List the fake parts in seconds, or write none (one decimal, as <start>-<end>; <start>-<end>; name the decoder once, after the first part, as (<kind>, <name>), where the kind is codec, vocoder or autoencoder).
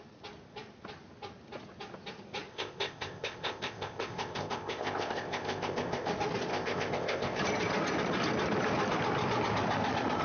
2.5-6.1 (codec, ZipCodec); 6.5-7.4